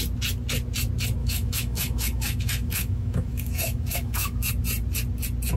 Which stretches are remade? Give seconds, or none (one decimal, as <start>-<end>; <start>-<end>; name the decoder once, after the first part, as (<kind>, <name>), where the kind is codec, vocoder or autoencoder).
1.2-4.5 (autoencoder, DAC-VAE)